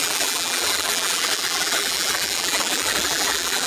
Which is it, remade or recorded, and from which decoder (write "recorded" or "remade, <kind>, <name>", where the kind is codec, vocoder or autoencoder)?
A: remade, vocoder, BigVGAN v2